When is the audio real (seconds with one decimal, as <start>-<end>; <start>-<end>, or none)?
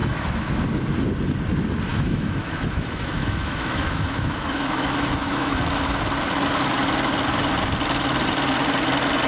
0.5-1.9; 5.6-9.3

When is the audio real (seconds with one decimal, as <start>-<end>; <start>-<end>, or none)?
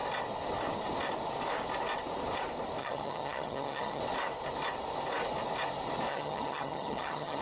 0.0-2.8; 4.0-6.1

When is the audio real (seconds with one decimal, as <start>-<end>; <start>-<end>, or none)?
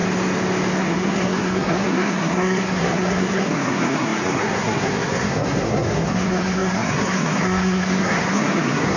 0.0-0.8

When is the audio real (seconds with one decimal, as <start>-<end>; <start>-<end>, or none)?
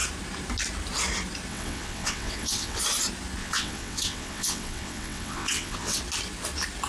0.0-1.5; 2.8-3.4; 6.0-6.9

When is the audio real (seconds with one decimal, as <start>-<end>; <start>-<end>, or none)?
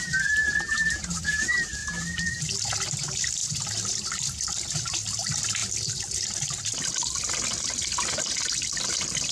0.0-1.8; 2.6-5.6; 6.9-9.3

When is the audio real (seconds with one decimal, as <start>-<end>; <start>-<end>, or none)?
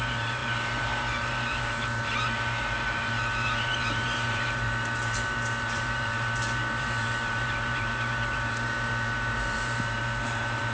none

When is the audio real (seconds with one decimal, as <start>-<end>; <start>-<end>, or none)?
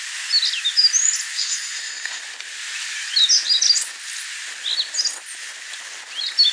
0.0-1.4; 2.2-6.5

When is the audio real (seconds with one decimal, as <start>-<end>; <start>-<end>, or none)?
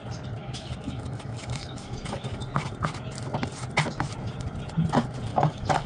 0.0-0.4; 2.4-5.3